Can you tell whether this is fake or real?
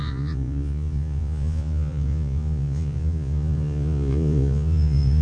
fake